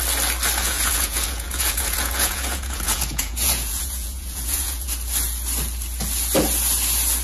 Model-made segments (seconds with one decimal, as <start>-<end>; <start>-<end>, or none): 0.6-4.9